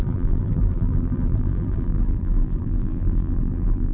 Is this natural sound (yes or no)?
no